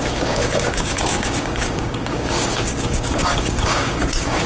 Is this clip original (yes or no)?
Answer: no